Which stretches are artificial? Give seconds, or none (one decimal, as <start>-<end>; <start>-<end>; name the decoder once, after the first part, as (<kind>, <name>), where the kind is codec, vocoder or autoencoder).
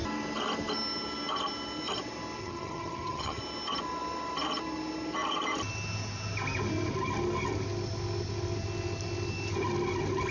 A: 2.4-3.4 (vocoder, HiFi-GAN)